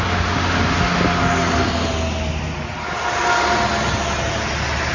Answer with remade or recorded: recorded